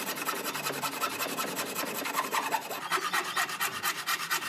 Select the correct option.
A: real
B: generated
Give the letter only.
A